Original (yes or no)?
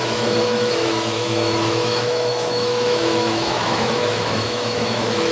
no